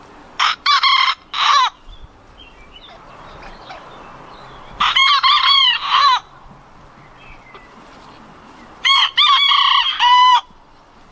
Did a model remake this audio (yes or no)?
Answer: yes